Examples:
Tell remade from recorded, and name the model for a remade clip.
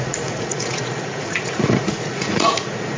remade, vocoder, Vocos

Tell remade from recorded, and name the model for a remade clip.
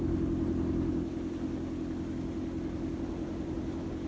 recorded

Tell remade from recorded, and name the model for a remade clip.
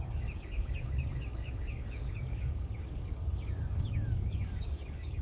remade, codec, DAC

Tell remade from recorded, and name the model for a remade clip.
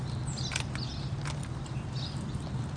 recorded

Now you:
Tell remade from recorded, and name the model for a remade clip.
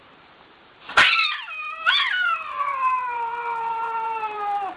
remade, vocoder, BigVGAN v2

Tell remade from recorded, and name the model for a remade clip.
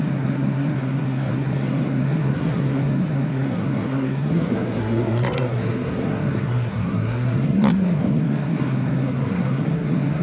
remade, codec, SNAC